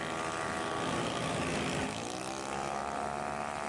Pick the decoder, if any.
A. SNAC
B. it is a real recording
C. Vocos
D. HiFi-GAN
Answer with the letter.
B